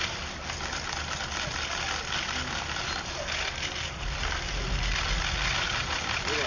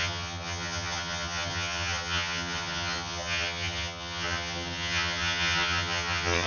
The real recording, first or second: first